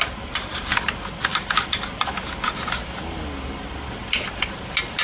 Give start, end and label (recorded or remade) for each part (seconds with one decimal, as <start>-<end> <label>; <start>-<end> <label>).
0.0-5.0 recorded